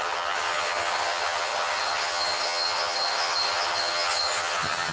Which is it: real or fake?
fake